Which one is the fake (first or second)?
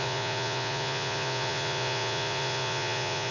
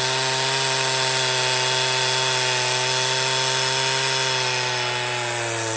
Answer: first